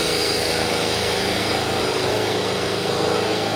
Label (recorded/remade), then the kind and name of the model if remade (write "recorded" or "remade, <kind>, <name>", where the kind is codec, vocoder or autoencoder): remade, codec, SNAC